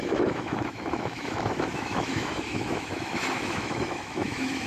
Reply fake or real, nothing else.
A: fake